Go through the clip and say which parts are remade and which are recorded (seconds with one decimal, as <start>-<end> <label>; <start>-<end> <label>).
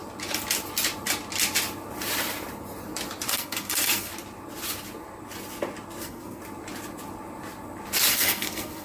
0.0-3.3 recorded; 3.3-4.1 remade; 4.1-6.0 recorded; 6.0-6.4 remade; 6.4-8.1 recorded; 8.1-8.8 remade